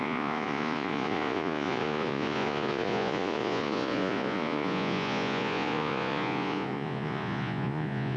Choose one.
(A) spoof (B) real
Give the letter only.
A